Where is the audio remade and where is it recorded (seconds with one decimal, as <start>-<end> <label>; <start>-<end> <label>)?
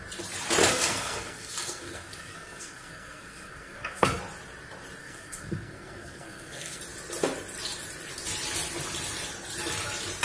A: 0.0-0.6 recorded; 0.6-4.2 remade; 4.2-5.0 recorded; 5.0-6.8 remade; 6.8-10.2 recorded